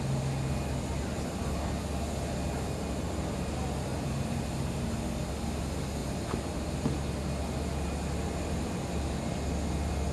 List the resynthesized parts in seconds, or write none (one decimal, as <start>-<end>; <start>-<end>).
3.9-5.3; 6.0-6.9